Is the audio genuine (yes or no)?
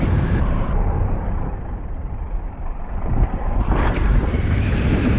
no